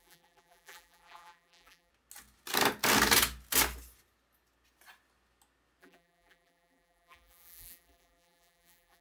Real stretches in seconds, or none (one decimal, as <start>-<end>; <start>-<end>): 1.9-5.8

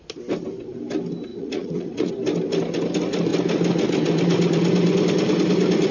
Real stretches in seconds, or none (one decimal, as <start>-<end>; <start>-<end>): 0.0-1.3; 2.1-5.9

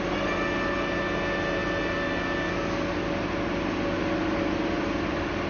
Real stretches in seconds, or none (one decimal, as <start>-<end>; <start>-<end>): 0.0-5.5

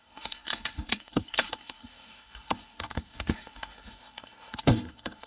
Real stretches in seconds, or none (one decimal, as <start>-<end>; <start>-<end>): none